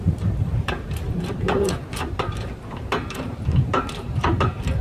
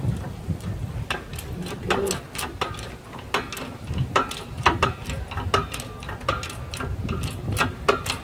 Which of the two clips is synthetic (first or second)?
first